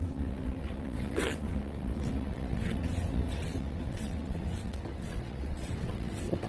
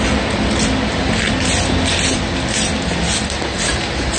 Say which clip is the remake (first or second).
first